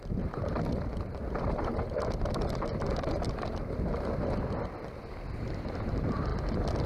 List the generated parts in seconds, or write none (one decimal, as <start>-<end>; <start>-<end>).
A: none